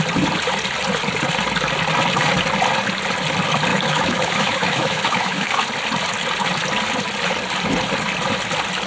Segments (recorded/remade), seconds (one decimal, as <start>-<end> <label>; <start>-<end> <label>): 0.0-3.7 recorded; 3.7-5.5 remade; 5.5-8.9 recorded